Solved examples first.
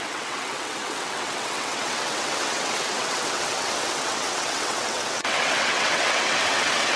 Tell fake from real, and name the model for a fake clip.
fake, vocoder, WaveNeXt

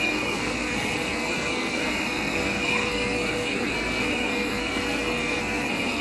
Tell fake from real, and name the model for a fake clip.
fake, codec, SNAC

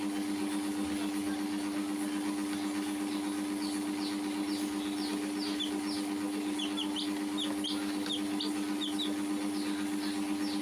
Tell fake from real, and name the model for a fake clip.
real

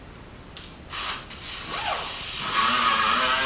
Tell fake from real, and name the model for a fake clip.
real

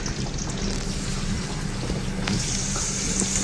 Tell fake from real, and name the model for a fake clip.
real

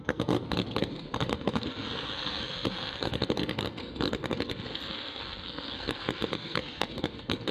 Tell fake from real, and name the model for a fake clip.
fake, codec, SNAC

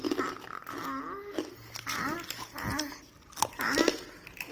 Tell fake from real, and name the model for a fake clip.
real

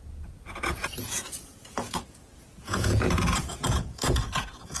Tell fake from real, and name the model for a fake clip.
fake, vocoder, Vocos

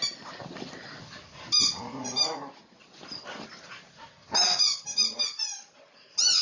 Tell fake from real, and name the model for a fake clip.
real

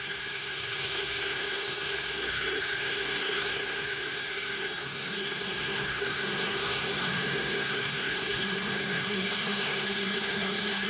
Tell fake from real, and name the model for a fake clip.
fake, codec, SNAC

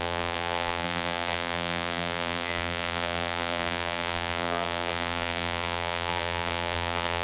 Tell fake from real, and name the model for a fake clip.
fake, vocoder, BigVGAN v2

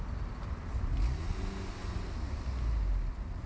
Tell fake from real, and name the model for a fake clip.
real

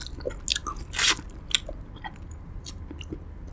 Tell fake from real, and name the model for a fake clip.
real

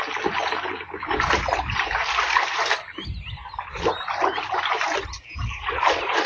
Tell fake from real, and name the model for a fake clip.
real